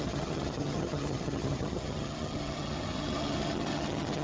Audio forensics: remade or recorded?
remade